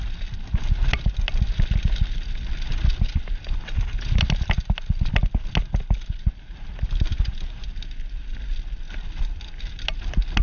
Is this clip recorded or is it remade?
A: recorded